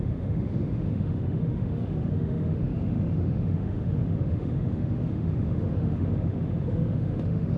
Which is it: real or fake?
fake